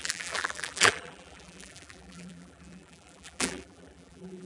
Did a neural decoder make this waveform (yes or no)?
yes